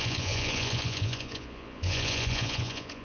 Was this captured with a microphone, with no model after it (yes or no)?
no